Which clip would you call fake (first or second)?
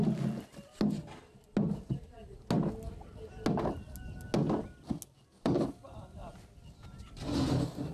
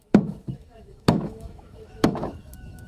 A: second